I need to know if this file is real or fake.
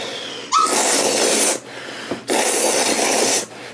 real